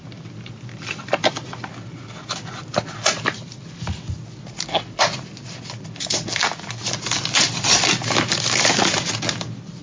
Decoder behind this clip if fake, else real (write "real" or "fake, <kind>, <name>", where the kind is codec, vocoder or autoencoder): real